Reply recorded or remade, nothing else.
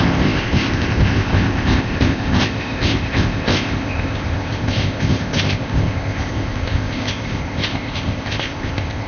remade